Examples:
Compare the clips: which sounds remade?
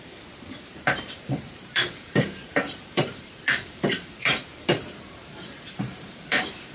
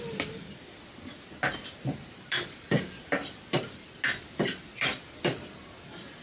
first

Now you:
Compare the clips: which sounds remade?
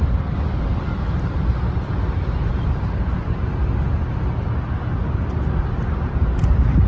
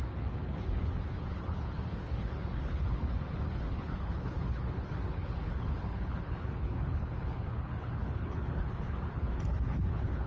second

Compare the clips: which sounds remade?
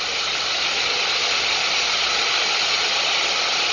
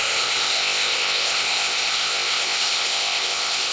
second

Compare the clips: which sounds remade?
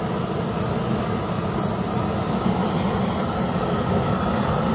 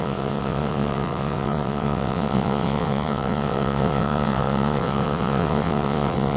second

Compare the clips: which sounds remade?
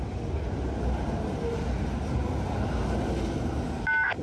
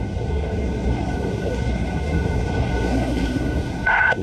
second